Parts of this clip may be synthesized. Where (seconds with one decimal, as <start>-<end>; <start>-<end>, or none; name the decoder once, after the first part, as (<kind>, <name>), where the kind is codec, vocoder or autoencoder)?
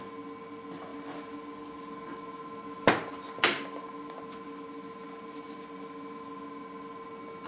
none